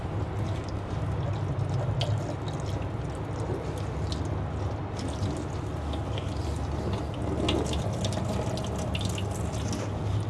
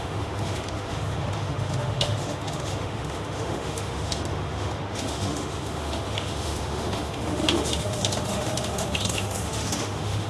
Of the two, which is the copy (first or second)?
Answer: second